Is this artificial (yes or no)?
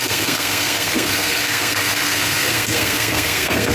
yes